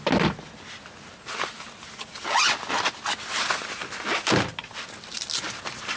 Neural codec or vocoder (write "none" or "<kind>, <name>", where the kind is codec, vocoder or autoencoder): none